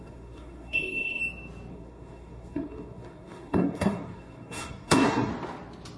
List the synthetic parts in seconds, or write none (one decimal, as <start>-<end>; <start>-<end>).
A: 0.0-1.2; 1.7-5.3